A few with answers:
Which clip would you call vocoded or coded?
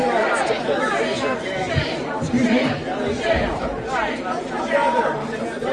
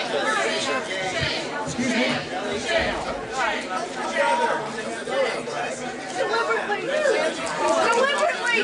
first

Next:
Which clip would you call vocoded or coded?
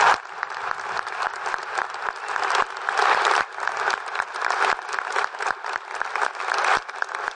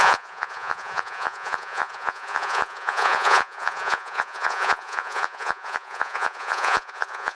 second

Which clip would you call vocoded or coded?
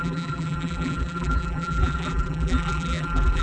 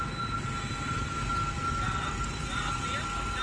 first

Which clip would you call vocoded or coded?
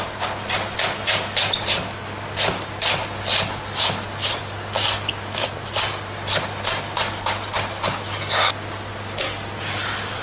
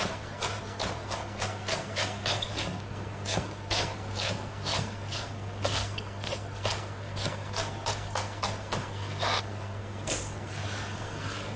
second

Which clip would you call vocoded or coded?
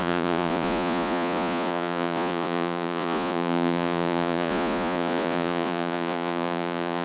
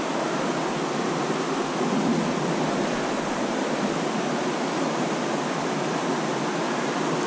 first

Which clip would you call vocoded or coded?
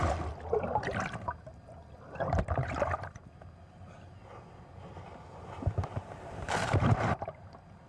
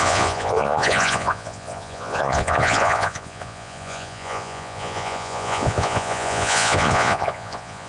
second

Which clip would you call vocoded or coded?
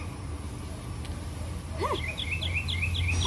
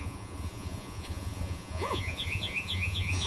second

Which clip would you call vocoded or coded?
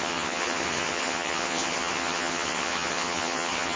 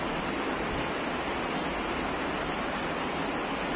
first